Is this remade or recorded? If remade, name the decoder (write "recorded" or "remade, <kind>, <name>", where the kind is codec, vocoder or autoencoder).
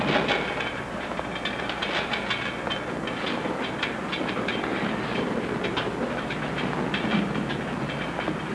recorded